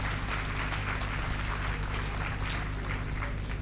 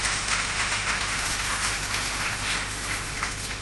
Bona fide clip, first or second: first